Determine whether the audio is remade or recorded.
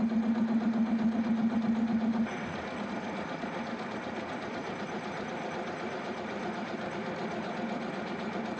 recorded